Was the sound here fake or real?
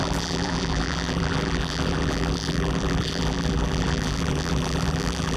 fake